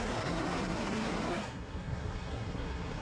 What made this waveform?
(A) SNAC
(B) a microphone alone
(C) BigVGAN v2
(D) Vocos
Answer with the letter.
A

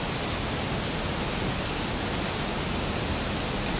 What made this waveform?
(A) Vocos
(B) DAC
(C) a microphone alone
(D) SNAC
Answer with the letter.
C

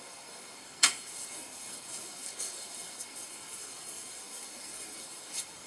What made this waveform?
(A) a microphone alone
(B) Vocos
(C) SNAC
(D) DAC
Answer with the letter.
C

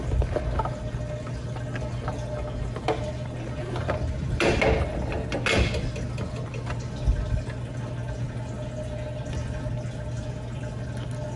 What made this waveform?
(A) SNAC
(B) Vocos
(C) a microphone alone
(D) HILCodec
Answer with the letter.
C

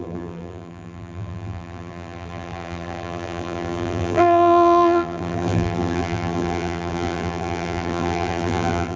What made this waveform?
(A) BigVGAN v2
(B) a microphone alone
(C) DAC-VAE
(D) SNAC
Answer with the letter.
A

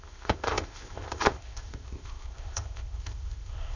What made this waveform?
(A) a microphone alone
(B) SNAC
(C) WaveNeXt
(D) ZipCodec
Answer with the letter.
D